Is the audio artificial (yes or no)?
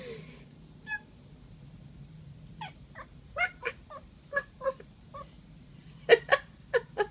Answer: no